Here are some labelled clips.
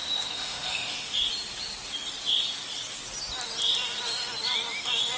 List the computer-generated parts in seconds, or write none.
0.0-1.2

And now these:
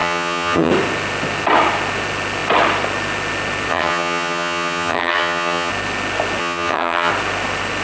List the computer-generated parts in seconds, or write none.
0.0-0.7; 3.7-5.7; 6.4-7.1

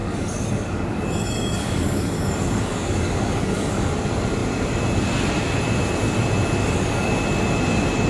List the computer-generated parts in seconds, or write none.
0.0-3.9; 6.6-7.1

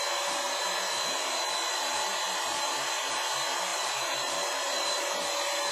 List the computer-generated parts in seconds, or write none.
2.1-2.7; 3.7-5.0

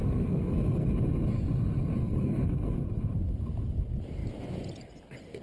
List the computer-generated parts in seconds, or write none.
0.0-0.9; 2.0-2.8

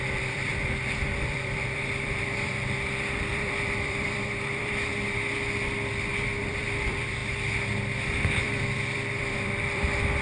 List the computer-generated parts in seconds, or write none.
0.0-4.9; 6.4-7.2; 8.4-10.2